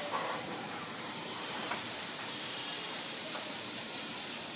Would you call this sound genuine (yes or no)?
no